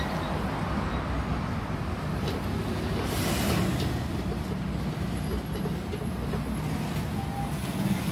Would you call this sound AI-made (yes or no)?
no